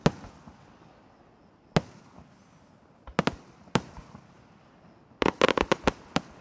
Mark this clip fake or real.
real